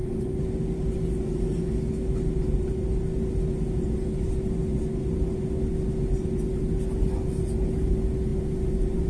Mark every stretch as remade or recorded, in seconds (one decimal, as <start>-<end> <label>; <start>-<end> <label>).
0.0-9.1 recorded